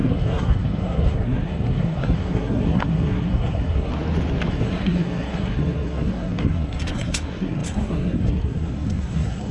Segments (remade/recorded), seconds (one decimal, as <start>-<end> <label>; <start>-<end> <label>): 0.0-3.9 remade; 3.9-4.5 recorded; 4.5-9.5 remade